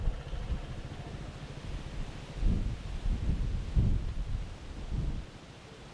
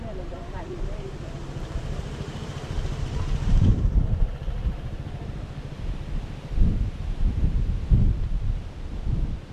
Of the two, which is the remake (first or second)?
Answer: second